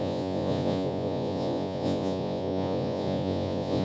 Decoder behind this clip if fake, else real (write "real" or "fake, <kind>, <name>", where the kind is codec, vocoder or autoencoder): fake, vocoder, Vocos